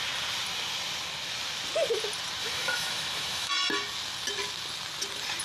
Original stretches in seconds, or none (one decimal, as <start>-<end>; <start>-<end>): 0.0-2.4; 3.5-5.4